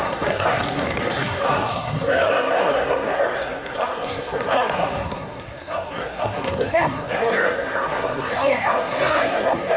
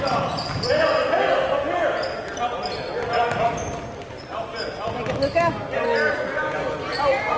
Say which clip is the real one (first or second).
second